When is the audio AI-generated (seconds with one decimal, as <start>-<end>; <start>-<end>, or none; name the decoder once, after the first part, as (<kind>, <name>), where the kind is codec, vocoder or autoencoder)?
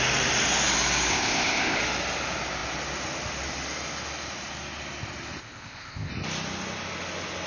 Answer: 1.1-1.8 (codec, ZipCodec); 5.4-6.1